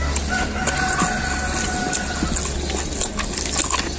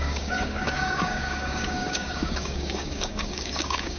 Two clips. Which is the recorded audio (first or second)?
first